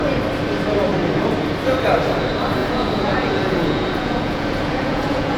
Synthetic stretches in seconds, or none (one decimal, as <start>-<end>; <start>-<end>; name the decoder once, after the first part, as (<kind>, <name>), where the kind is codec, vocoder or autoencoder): 2.6-5.4 (vocoder, Vocos)